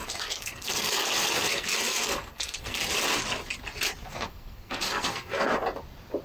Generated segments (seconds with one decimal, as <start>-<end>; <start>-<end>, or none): 0.0-2.8; 4.0-5.5

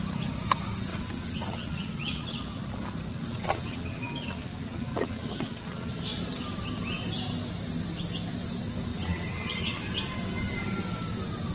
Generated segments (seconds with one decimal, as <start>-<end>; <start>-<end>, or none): 0.9-2.4; 3.1-5.9; 8.9-9.8

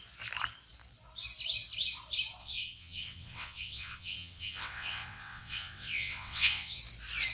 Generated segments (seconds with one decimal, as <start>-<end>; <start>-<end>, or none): 2.4-6.8

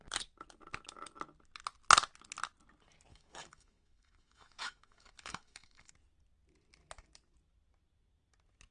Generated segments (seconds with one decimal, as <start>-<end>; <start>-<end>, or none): 3.1-5.9

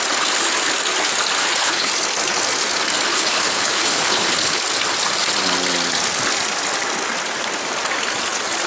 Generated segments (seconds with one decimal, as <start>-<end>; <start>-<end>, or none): 1.4-1.9; 3.1-4.6

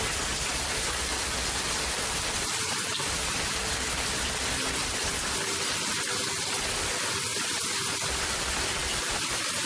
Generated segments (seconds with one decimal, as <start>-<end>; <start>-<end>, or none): none